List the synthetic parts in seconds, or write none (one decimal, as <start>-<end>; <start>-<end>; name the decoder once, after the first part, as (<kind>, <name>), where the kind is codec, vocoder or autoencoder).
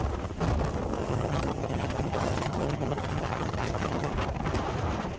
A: 1.0-4.1 (vocoder, HiFi-GAN)